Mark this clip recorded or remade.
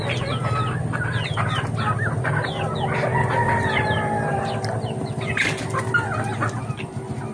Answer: recorded